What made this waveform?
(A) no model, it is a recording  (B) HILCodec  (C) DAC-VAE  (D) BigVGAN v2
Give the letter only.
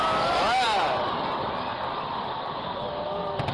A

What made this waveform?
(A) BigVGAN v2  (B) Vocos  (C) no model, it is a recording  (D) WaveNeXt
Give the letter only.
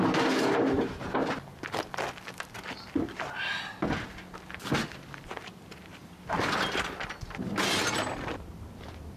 A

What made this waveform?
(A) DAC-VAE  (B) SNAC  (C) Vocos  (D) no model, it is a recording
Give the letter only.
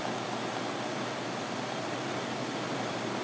D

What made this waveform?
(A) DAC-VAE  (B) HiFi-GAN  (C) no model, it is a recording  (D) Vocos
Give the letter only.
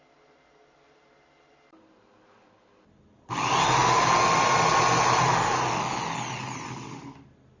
C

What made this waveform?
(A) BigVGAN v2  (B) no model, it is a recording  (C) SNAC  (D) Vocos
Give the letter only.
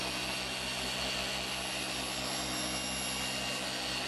B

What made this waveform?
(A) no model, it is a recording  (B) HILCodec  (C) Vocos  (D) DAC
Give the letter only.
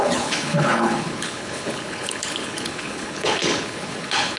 B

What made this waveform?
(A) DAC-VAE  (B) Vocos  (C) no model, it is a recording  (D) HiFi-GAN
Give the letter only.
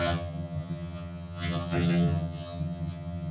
D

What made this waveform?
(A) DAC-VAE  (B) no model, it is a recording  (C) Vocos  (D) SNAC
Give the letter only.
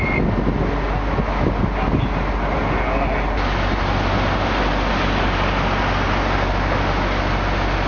B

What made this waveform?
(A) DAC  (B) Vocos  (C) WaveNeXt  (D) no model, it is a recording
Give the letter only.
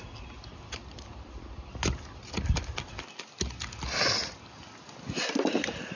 D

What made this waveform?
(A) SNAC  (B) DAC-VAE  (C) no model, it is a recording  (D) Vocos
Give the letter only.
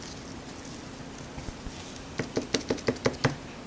C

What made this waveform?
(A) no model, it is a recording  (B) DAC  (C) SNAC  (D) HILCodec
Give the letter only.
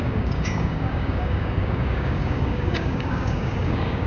B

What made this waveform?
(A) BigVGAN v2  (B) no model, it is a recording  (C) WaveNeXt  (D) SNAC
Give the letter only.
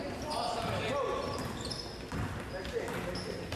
B